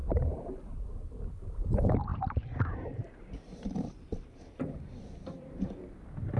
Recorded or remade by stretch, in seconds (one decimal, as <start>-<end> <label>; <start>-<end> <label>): 0.0-0.8 remade; 0.8-2.1 recorded; 2.1-5.8 remade; 5.8-6.4 recorded

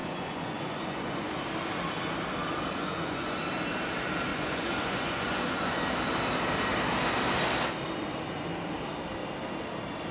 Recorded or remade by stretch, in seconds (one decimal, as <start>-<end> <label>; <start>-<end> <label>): 0.0-1.3 remade; 1.3-2.8 recorded; 2.8-3.4 remade; 3.4-4.3 recorded; 4.3-5.8 remade; 5.8-10.1 recorded

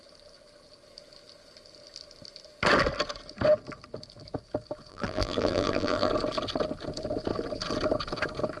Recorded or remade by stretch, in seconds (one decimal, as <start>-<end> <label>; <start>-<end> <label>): 0.0-4.9 recorded; 4.9-6.1 remade; 6.1-8.6 recorded

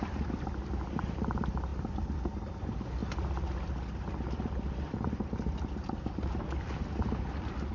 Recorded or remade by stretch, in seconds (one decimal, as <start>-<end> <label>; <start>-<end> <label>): 0.0-7.7 recorded

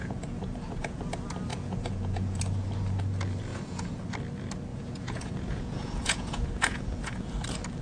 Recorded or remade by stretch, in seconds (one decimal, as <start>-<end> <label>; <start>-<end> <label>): 0.0-1.0 remade; 1.0-1.5 recorded; 1.5-2.4 remade; 2.4-3.5 recorded; 3.5-4.1 remade; 4.1-4.7 recorded; 4.7-7.3 remade; 7.3-7.8 recorded

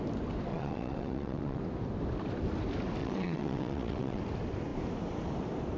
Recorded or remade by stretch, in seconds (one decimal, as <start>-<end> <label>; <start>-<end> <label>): 0.0-0.5 recorded; 0.5-1.6 remade; 1.6-3.0 recorded; 3.0-4.2 remade; 4.2-5.8 recorded